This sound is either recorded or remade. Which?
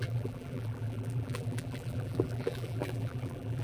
remade